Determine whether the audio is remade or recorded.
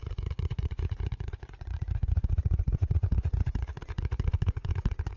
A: remade